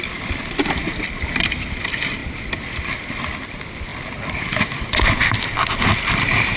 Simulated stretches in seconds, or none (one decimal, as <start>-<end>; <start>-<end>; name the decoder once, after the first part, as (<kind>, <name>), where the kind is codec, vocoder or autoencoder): none